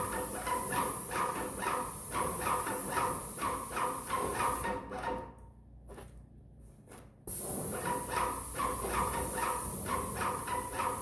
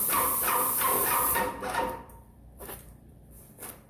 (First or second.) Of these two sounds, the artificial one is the second